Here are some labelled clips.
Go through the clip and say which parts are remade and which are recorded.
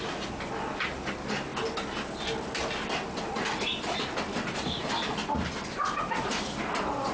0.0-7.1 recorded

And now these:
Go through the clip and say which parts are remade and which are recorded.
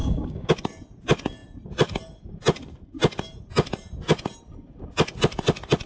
0.0-0.5 remade; 0.5-5.9 recorded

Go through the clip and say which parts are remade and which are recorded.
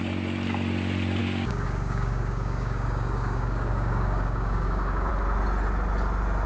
0.0-1.2 recorded; 1.2-5.1 remade; 5.1-6.5 recorded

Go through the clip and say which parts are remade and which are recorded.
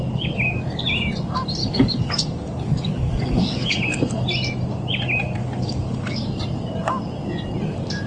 0.0-1.6 recorded; 1.6-3.8 remade; 3.8-5.4 recorded; 5.4-6.3 remade; 6.3-8.1 recorded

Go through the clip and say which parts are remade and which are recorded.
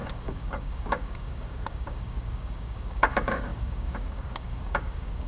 0.0-5.3 remade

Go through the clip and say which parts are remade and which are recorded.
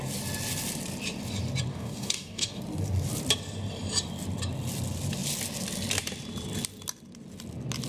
0.0-1.7 recorded; 1.7-2.6 remade; 2.6-7.9 recorded